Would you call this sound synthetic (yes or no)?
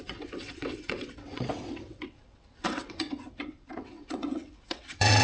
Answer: yes